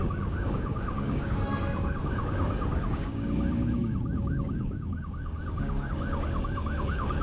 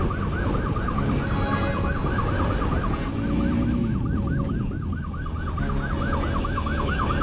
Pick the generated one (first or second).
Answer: first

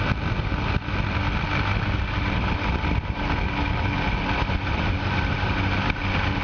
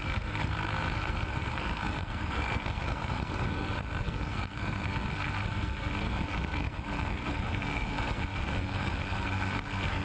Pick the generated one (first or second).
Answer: second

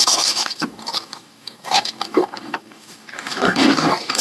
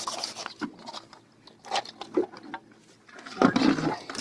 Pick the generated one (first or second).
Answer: first